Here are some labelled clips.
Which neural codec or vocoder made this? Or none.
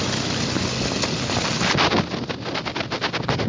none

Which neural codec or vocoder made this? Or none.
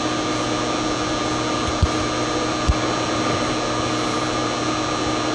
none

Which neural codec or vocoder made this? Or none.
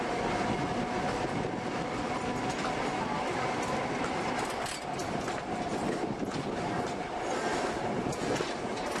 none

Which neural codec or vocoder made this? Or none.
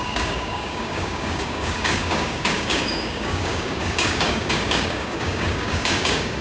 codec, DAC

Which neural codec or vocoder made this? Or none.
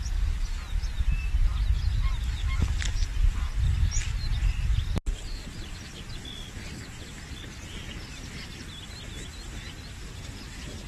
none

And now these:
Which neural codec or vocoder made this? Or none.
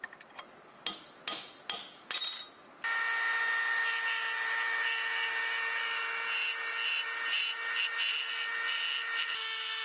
none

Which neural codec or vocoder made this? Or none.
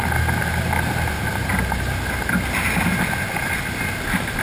none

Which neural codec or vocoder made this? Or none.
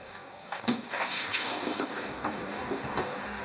codec, DAC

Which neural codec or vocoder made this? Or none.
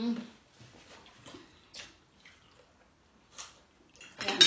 none